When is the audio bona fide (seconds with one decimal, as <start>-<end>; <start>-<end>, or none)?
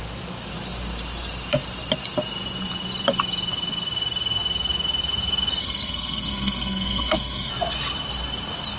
0.0-5.6; 7.5-8.8